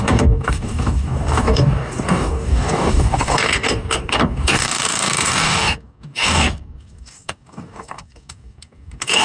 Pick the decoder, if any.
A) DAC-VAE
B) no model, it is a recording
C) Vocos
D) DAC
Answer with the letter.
D